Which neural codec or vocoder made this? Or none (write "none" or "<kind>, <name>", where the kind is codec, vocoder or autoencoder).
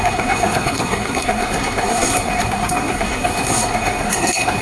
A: codec, SNAC